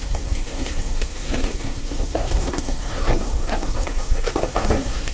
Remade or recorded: remade